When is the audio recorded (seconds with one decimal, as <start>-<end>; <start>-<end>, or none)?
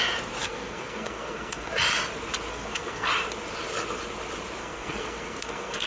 0.0-0.4; 1.7-2.5; 3.1-4.6